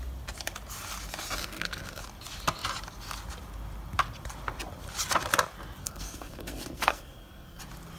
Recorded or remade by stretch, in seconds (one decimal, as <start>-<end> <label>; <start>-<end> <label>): 0.0-1.4 recorded; 1.4-2.0 remade; 2.0-5.8 recorded; 5.8-7.6 remade; 7.6-8.0 recorded